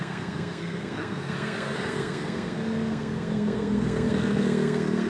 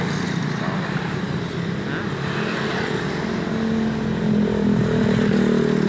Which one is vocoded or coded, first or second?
first